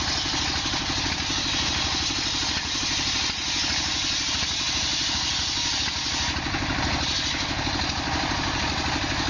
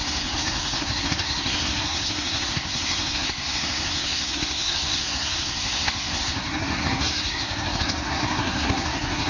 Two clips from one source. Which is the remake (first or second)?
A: second